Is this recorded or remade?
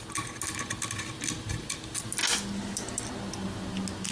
recorded